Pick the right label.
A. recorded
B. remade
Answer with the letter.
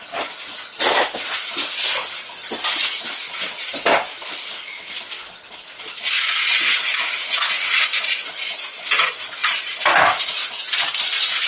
A